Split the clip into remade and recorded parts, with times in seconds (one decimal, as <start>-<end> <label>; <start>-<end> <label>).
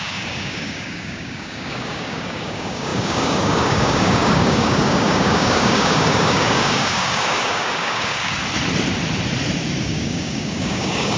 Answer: 0.0-8.4 remade; 8.4-9.8 recorded; 9.8-11.2 remade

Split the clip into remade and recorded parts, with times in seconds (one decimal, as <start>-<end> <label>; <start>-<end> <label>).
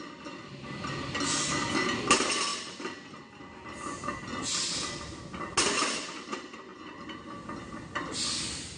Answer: 0.0-8.8 recorded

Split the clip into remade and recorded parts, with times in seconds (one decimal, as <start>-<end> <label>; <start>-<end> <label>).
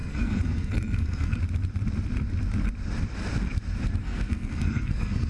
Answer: 0.0-1.4 remade; 1.4-4.0 recorded; 4.0-5.3 remade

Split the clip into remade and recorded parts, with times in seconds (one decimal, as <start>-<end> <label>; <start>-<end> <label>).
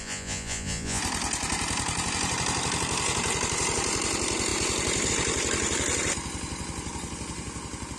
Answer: 0.0-1.0 remade; 1.0-8.0 recorded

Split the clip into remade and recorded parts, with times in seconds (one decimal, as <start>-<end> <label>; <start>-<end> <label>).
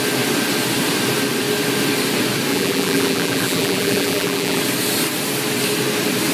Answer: 0.0-2.5 recorded; 2.5-4.6 remade; 4.6-6.3 recorded